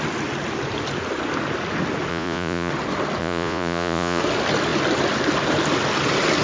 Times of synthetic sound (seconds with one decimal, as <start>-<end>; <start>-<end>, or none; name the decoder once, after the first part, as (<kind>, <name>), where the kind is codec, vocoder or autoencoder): 2.1-2.7 (vocoder, Vocos); 3.2-4.2